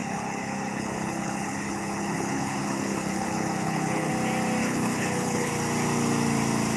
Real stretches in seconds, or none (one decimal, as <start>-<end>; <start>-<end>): 4.1-4.6; 5.5-6.8